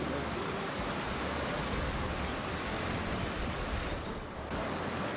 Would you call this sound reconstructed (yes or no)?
no